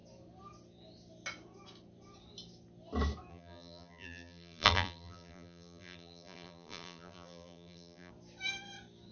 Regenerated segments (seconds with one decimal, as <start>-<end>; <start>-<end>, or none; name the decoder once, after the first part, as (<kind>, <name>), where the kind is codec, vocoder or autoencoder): 3.3-8.1 (vocoder, BigVGAN v2)